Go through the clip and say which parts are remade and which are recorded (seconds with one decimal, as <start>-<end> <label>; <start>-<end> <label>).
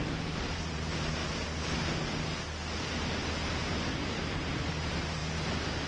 0.0-1.2 remade; 1.2-4.7 recorded; 4.7-5.2 remade; 5.2-5.9 recorded